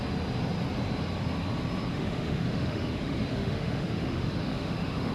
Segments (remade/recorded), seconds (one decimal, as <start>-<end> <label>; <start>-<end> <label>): 0.0-1.9 recorded; 1.9-5.1 remade